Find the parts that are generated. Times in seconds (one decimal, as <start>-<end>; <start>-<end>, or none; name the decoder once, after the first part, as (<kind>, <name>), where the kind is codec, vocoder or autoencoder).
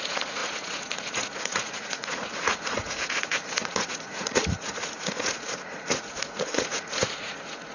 0.0-7.7 (vocoder, Vocos)